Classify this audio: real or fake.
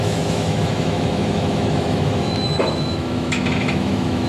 fake